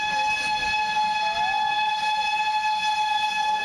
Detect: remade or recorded recorded